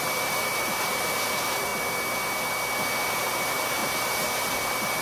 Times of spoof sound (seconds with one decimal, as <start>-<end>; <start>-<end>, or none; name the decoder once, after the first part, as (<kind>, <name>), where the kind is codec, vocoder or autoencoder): 0.0-1.7 (vocoder, BigVGAN v2); 3.1-5.0